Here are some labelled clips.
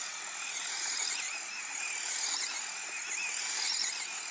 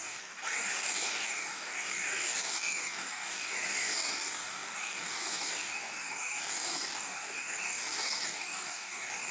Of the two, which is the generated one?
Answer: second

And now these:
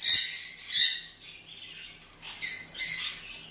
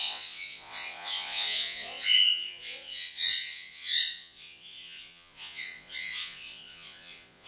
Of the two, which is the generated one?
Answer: second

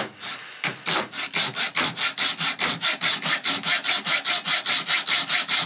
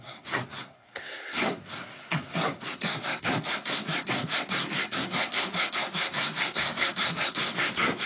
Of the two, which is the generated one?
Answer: second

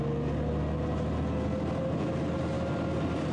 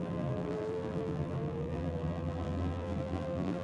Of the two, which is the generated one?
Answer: second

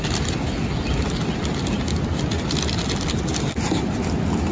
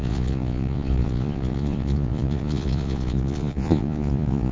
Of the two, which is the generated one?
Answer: second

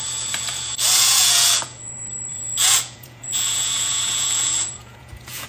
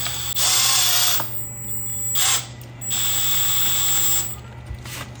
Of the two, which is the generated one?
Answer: first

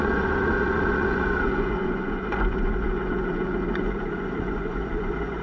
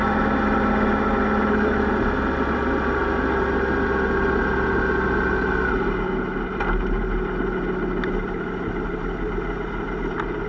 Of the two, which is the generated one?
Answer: first